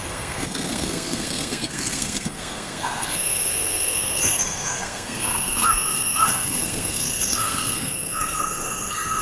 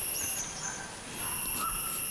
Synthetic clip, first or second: first